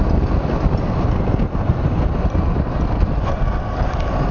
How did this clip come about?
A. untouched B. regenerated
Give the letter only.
A